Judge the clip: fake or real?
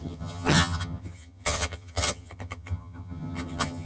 fake